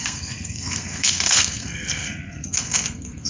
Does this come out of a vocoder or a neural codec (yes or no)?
yes